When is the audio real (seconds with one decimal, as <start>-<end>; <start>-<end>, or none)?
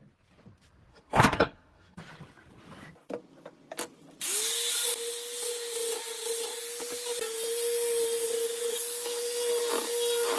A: 0.0-0.9; 2.0-10.4